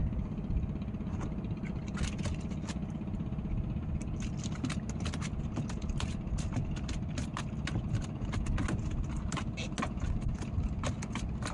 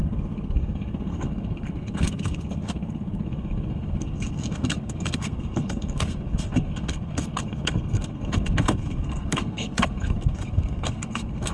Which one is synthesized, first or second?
second